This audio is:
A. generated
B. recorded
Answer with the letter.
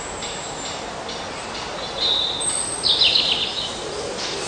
B